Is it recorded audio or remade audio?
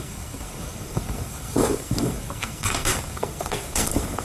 remade